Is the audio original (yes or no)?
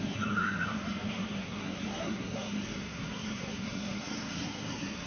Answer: no